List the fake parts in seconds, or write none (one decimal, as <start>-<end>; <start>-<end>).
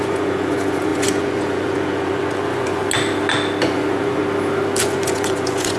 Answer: 0.0-2.8; 3.6-4.2; 4.8-5.8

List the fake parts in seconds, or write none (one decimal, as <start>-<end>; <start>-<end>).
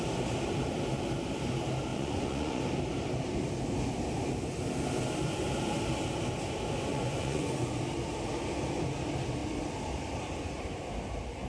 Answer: 1.9-2.6; 6.9-7.8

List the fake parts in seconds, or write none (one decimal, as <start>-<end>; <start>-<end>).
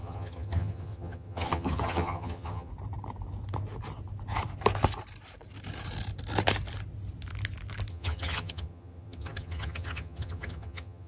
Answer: 0.0-2.7; 7.9-11.1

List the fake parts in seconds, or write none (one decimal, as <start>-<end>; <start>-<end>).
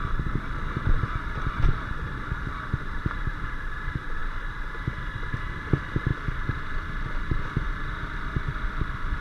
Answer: none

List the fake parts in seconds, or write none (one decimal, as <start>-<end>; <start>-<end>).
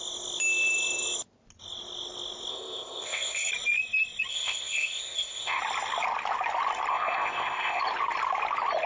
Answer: 2.5-3.5; 4.3-5.6; 6.9-7.8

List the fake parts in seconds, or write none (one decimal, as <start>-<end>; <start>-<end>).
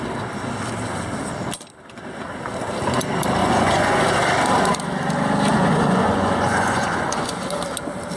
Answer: 3.4-4.1; 5.5-7.4